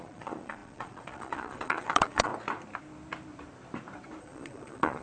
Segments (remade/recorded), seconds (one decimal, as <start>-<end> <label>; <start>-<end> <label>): 0.0-2.3 remade; 2.3-4.2 recorded; 4.2-5.0 remade